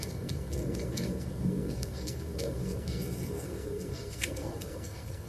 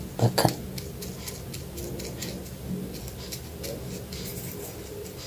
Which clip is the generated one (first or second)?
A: first